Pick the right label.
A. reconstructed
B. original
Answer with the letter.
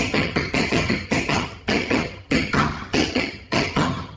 A